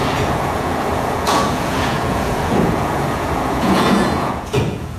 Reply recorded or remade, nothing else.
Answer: remade